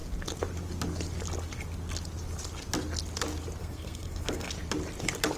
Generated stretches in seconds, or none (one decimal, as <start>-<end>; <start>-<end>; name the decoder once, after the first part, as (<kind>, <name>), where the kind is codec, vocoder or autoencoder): 3.6-4.5 (codec, SNAC)